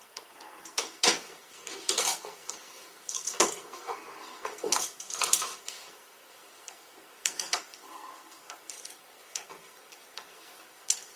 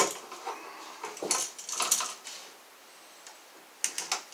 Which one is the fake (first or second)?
first